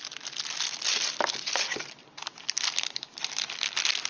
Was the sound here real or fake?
real